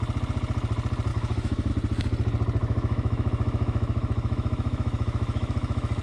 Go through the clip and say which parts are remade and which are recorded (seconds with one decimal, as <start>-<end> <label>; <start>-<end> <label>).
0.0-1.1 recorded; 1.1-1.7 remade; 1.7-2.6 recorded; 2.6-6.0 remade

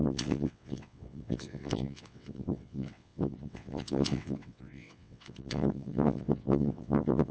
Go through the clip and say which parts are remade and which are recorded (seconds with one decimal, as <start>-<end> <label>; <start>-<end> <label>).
0.0-7.3 remade

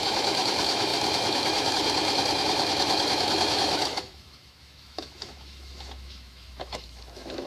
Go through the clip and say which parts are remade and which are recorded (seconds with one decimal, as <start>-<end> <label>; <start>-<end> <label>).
0.0-7.5 remade

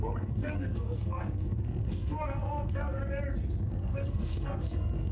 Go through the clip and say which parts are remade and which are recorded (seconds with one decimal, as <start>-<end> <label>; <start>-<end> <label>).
0.0-3.0 remade; 3.0-3.7 recorded; 3.7-5.1 remade

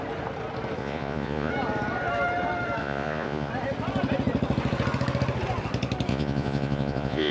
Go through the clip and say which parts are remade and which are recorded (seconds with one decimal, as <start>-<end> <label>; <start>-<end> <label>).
0.0-0.8 recorded; 0.8-1.5 remade; 1.5-2.8 recorded; 2.8-3.5 remade; 3.5-6.1 recorded; 6.1-7.3 remade

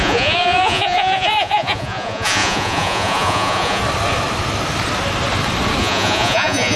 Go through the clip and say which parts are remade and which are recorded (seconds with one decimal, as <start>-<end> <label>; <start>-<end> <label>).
0.0-3.8 remade; 3.8-5.8 recorded; 5.8-6.8 remade